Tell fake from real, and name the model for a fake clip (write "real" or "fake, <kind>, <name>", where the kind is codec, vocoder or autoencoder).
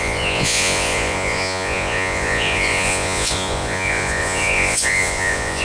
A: fake, vocoder, Vocos